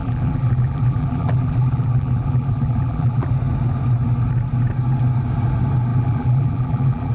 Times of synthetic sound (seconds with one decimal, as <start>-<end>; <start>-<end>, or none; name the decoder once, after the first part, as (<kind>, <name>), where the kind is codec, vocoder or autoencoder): 0.0-3.3 (vocoder, BigVGAN v2); 5.9-7.1